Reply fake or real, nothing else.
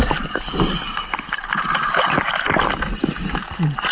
real